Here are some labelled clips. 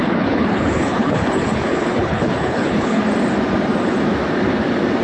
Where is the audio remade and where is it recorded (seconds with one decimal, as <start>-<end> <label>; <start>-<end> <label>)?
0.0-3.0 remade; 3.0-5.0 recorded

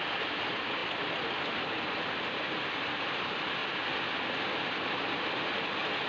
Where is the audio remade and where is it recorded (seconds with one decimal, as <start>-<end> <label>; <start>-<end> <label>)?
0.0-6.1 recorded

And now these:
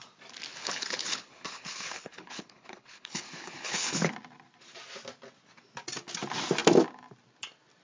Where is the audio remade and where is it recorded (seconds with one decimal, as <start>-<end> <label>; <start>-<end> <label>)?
0.0-0.5 recorded; 0.5-4.1 remade; 4.1-7.8 recorded